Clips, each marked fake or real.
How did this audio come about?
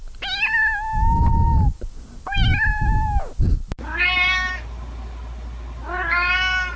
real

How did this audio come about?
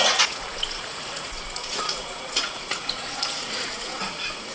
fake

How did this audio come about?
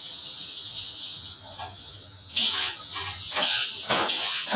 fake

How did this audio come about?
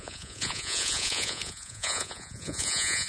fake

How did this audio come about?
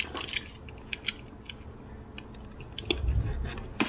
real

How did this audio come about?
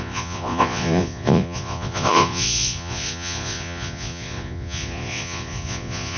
fake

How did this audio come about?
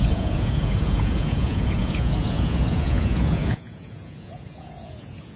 fake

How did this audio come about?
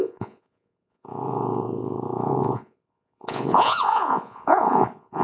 fake